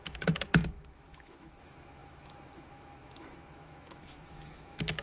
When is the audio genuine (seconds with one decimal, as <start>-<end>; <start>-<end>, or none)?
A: none

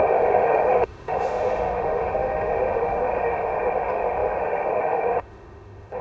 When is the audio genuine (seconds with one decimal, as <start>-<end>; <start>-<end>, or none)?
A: none

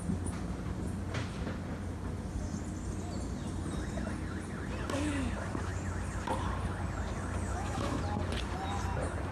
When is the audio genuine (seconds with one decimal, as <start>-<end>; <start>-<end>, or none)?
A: 0.0-7.5; 8.0-9.3

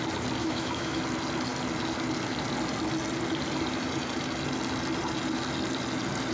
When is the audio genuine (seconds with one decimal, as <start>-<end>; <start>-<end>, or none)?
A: 0.0-0.4; 1.0-6.3

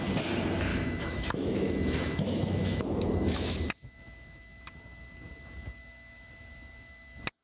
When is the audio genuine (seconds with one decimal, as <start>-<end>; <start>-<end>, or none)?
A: 0.0-0.7; 3.6-7.4

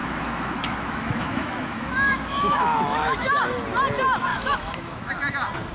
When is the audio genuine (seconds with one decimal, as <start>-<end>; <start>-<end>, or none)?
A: 3.4-4.3; 5.1-5.7

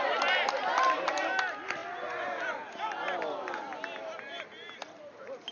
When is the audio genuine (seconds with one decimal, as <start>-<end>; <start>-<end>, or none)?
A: 0.0-5.5